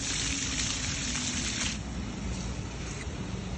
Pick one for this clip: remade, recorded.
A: recorded